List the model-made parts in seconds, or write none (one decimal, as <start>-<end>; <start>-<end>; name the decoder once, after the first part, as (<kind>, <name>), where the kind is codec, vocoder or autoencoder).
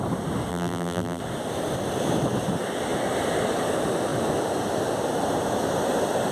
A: 0.5-1.2 (vocoder, BigVGAN v2)